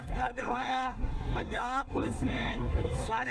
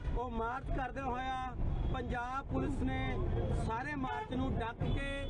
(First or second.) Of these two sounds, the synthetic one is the first